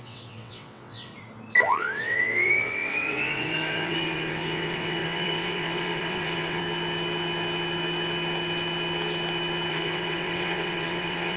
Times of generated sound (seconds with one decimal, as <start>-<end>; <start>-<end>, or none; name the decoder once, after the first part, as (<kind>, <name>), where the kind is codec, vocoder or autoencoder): 0.0-1.1 (vocoder, WaveNeXt); 1.6-6.6; 9.7-11.4

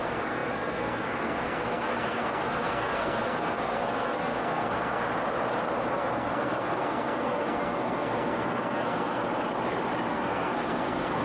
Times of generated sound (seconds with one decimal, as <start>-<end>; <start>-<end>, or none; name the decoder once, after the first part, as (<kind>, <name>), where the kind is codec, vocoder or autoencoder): 0.0-5.0 (codec, SNAC); 5.9-9.2; 10.1-11.2